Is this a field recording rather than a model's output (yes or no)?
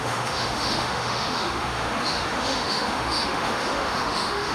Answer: no